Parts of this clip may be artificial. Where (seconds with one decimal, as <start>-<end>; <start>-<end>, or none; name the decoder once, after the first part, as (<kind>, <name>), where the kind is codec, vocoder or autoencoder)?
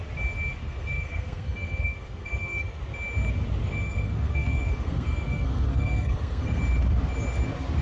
0.6-2.8 (codec, SNAC); 3.6-6.6